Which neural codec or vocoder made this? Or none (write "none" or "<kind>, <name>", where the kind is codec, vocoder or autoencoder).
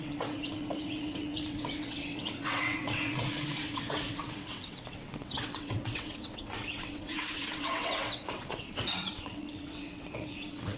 vocoder, WaveNeXt